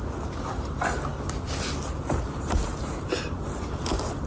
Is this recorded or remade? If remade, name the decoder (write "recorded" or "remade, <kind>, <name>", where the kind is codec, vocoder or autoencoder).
recorded